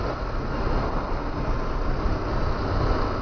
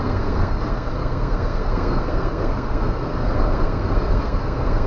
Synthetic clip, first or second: second